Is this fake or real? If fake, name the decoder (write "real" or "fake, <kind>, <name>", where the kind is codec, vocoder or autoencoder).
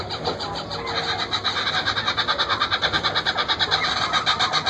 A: real